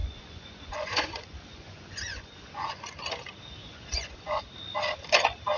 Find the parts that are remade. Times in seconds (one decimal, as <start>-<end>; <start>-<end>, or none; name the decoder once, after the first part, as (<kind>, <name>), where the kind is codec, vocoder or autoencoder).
0.0-2.9 (vocoder, Vocos); 3.6-4.4